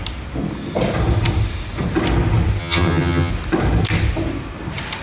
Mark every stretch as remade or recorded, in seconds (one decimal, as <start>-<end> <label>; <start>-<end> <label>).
0.0-2.6 recorded; 2.6-3.3 remade; 3.3-5.0 recorded